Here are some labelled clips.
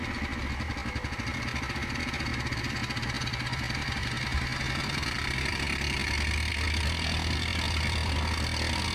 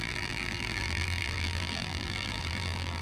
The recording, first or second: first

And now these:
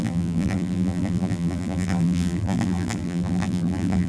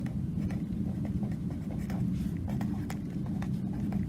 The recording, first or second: second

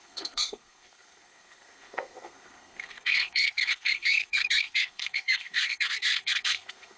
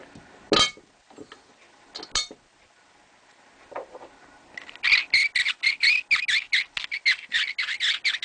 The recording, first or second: second